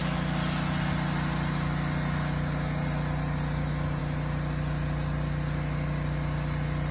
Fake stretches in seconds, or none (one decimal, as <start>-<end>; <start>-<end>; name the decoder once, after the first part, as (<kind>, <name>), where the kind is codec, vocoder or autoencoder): none